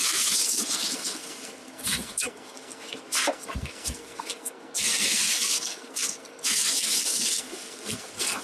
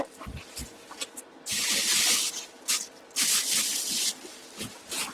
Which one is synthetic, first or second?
first